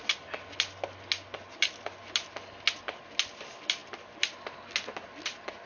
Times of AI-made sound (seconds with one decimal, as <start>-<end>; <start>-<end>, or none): none